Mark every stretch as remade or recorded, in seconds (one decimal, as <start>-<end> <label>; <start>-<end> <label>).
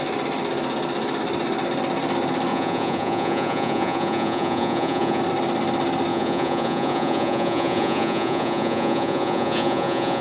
0.0-2.5 recorded; 2.5-5.2 remade; 5.2-6.1 recorded; 6.1-10.2 remade